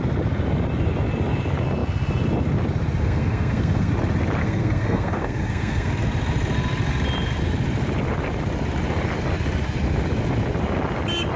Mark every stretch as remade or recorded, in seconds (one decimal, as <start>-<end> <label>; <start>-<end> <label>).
0.0-3.0 recorded; 3.0-3.9 remade; 3.9-4.4 recorded; 4.4-5.9 remade; 5.9-11.4 recorded